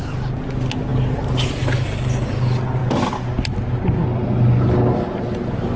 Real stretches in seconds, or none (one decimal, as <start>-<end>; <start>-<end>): 0.0-5.8